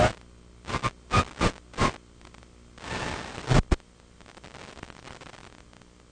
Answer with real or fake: real